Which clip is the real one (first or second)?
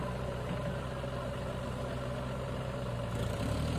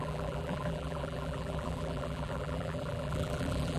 first